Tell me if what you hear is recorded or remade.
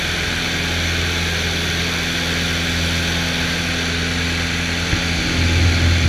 recorded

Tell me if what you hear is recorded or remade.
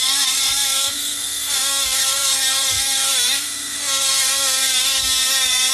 remade